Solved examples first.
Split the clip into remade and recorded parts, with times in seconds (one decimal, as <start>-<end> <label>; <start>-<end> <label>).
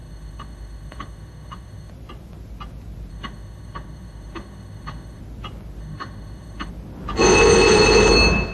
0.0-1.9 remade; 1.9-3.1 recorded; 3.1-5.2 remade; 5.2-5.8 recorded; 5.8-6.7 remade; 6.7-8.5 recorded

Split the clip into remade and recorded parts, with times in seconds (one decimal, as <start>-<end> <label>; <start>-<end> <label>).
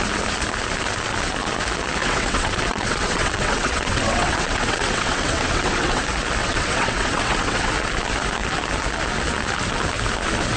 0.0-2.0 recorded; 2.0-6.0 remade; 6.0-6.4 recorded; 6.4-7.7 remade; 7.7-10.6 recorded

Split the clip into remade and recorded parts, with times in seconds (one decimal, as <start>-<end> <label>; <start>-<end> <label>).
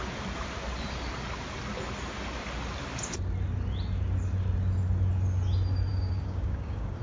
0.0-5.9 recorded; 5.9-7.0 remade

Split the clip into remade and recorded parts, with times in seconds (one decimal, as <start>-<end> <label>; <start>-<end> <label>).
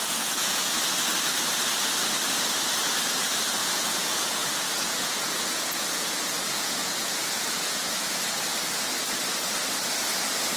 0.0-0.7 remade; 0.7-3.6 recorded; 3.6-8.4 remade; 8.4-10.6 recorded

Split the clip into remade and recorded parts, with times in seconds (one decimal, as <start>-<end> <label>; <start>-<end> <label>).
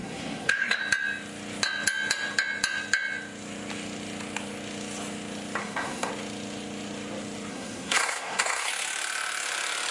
0.0-0.8 remade; 0.8-5.6 recorded; 5.6-6.1 remade; 6.1-7.5 recorded; 7.5-8.7 remade; 8.7-9.9 recorded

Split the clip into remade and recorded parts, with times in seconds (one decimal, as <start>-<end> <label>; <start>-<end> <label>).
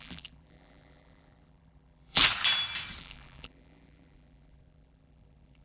0.0-2.2 remade; 2.2-3.0 recorded; 3.0-5.6 remade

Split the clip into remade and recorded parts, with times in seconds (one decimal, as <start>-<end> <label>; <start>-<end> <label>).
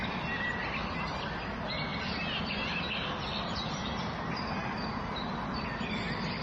0.0-6.4 recorded